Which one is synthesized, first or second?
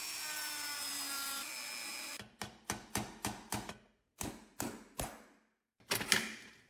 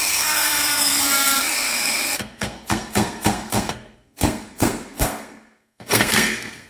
second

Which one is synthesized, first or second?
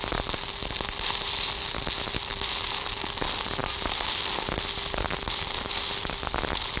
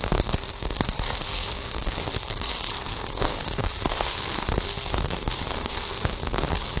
second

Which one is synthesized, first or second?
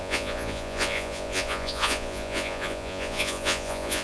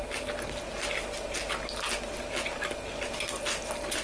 first